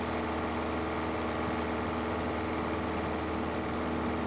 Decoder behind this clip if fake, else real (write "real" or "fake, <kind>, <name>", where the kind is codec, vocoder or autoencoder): real